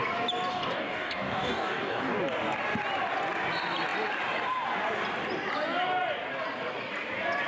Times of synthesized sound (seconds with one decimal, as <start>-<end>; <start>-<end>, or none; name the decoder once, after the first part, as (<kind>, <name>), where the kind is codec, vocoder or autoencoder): 0.5-2.2 (codec, DAC)